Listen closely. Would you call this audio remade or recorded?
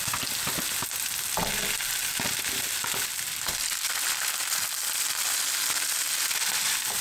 recorded